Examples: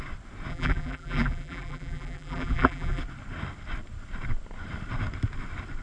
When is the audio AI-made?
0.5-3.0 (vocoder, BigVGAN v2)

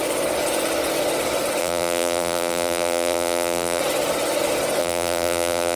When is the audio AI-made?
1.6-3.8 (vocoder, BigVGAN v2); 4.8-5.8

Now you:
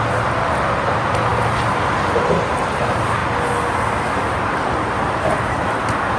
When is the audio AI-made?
1.3-1.9 (vocoder, BigVGAN v2)

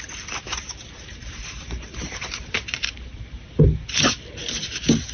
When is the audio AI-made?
0.5-3.6 (vocoder, BigVGAN v2)

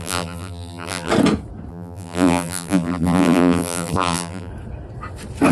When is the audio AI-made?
0.0-1.1 (vocoder, BigVGAN v2); 1.7-4.5

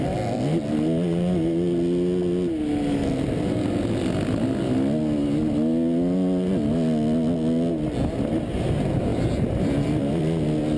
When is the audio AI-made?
9.1-10.2 (vocoder, BigVGAN v2)

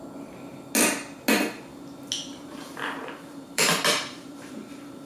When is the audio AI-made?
2.3-5.1 (vocoder, BigVGAN v2)